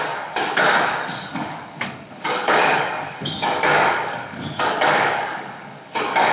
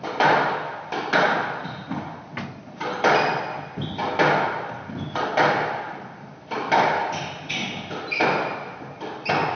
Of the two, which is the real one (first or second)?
second